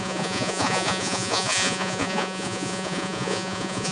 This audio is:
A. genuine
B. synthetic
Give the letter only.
B